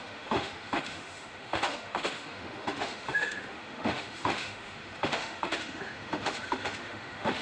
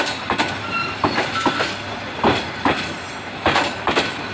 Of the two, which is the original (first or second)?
second